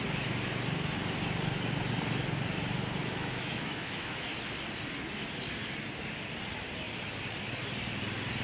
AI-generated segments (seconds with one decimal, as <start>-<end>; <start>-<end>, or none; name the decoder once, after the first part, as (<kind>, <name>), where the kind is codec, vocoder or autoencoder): 3.0-4.3 (autoencoder, DAC-VAE)